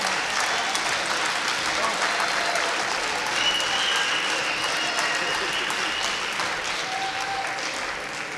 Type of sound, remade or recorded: recorded